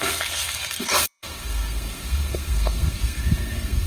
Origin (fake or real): fake